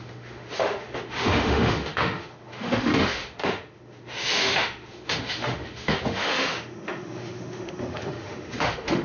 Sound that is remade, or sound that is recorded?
remade